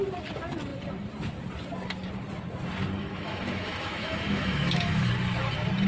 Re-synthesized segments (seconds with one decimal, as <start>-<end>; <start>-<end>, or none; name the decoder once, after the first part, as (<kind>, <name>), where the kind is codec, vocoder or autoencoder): 3.0-5.1 (autoencoder, DAC-VAE)